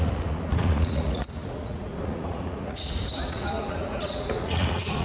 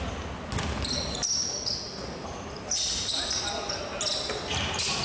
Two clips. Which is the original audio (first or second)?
second